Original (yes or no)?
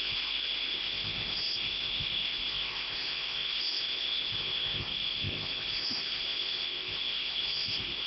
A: no